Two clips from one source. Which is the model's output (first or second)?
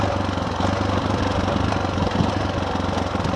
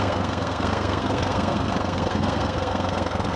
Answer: second